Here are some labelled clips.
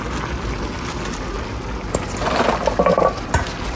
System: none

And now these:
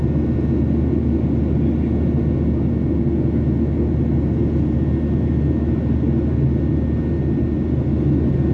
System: none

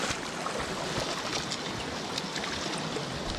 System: none